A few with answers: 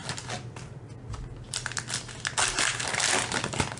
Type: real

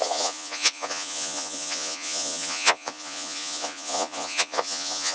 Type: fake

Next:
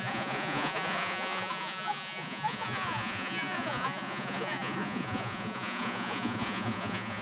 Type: fake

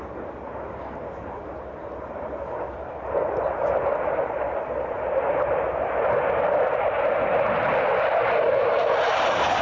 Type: real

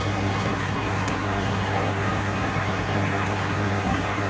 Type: fake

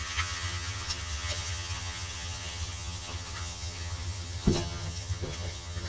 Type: fake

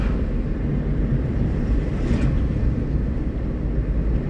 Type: real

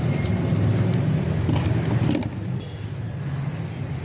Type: real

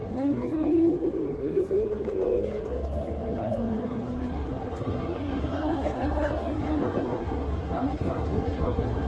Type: fake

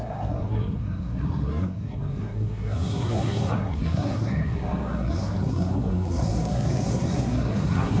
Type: fake